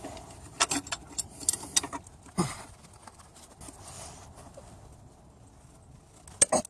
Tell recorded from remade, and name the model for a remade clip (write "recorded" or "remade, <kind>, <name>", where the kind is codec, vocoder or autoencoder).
recorded